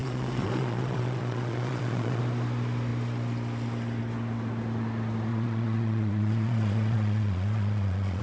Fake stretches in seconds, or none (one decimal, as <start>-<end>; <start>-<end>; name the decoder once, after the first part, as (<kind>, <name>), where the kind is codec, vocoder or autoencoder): 0.0-2.2 (vocoder, Vocos); 5.3-8.2